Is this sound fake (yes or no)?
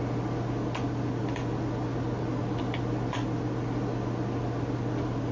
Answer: no